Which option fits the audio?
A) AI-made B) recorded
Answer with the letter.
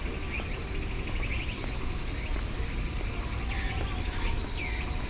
B